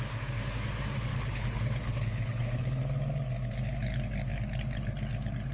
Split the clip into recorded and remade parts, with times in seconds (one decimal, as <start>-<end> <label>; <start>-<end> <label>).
0.0-1.1 recorded; 1.1-2.8 remade; 2.8-5.5 recorded